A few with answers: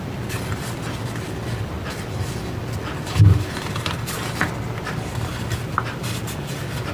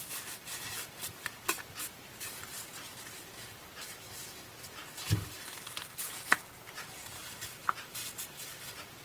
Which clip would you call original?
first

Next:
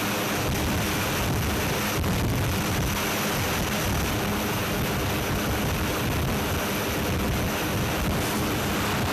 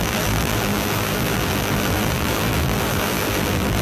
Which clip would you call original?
first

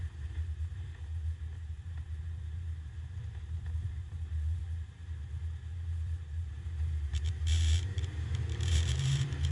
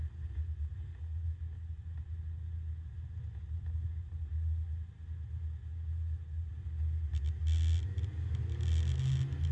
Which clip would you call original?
second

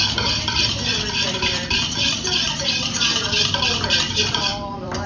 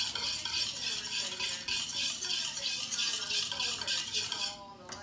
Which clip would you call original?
second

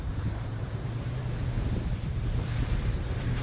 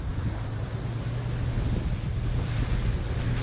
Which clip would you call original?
second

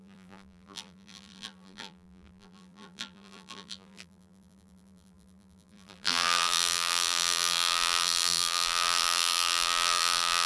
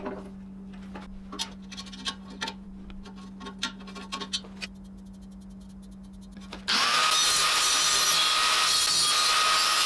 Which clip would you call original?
second